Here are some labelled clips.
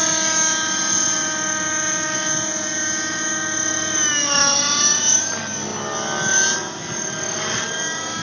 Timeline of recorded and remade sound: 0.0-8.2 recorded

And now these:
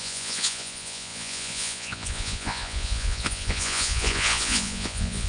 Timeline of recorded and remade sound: 0.0-5.3 remade

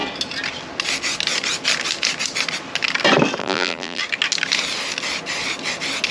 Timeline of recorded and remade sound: 0.0-3.4 recorded; 3.4-4.0 remade; 4.0-6.1 recorded

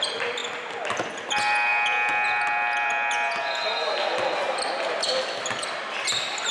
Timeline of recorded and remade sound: 0.0-6.5 recorded

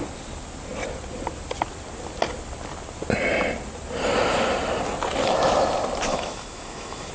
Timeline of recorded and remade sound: 0.0-6.1 recorded; 6.1-7.1 remade

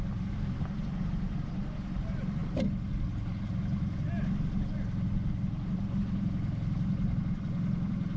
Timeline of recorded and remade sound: 0.0-8.2 recorded